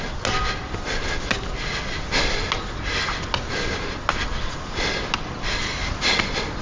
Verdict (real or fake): real